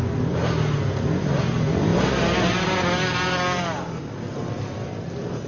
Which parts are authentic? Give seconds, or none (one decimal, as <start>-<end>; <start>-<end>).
0.0-5.5